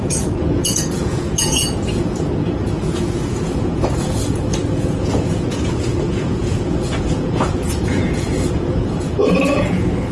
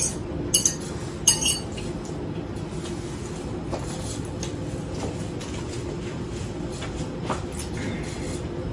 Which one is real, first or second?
second